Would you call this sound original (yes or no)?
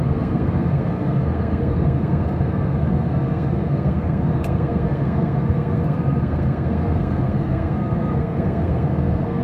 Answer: no